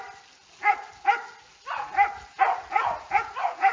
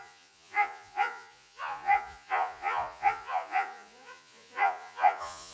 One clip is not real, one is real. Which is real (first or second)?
first